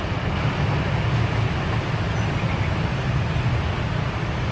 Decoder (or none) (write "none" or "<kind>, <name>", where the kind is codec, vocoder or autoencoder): none